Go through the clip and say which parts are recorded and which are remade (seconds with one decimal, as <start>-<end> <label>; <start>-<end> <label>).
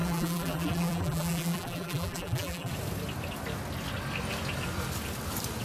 0.0-2.7 remade; 2.7-5.6 recorded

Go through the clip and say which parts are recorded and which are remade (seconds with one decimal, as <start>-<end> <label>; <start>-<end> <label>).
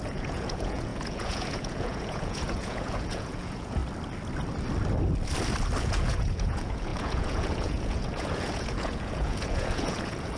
0.0-3.8 remade; 3.8-5.8 recorded; 5.8-10.4 remade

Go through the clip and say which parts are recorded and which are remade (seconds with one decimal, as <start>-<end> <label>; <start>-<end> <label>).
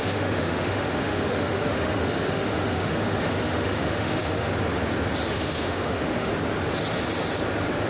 0.0-4.5 remade; 4.5-5.3 recorded; 5.3-6.3 remade; 6.3-7.9 recorded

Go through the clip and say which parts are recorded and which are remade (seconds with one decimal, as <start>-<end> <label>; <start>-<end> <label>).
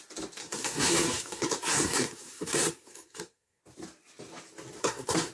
0.0-0.4 recorded; 0.4-3.6 remade; 3.6-4.8 recorded; 4.8-5.3 remade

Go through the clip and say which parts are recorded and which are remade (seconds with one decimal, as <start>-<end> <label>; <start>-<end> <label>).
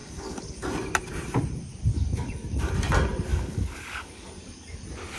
0.0-0.7 remade; 0.7-1.9 recorded; 1.9-2.7 remade; 2.7-3.3 recorded; 3.3-4.8 remade; 4.8-5.2 recorded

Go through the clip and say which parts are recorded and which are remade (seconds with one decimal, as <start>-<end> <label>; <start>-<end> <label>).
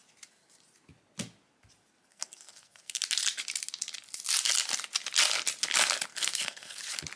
0.0-2.1 recorded; 2.1-3.0 remade; 3.0-6.1 recorded; 6.1-6.8 remade; 6.8-7.2 recorded